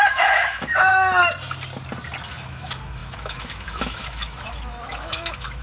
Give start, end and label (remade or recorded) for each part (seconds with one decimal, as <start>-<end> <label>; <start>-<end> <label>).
0.0-1.2 remade; 1.2-2.3 recorded; 2.3-5.6 remade